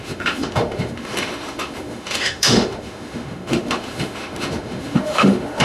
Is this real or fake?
fake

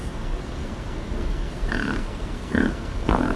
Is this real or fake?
fake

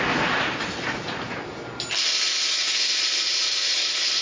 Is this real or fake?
real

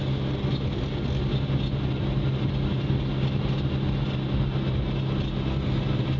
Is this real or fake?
real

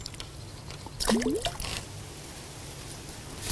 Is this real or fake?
real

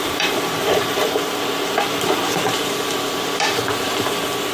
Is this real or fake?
fake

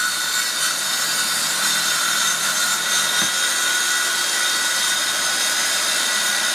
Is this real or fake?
real